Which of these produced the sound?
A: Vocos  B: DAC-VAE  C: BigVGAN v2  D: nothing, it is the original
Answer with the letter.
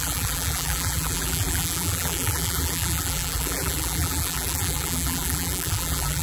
C